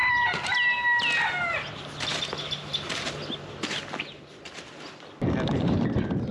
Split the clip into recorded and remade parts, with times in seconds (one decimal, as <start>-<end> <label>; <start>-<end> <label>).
0.0-6.3 recorded